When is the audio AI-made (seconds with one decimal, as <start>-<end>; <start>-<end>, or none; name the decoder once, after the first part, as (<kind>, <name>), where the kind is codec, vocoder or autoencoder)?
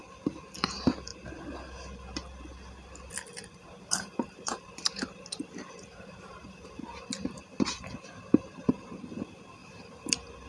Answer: 3.6-6.8 (vocoder, BigVGAN v2); 9.6-10.1